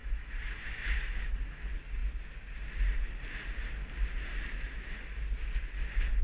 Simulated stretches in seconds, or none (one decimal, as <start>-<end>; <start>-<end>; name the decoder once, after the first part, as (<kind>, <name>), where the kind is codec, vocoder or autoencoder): 0.0-1.6 (autoencoder, DAC-VAE); 4.3-4.9